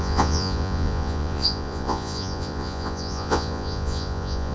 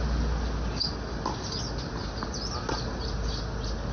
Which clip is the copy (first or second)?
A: first